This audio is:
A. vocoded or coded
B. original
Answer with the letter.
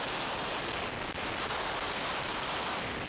B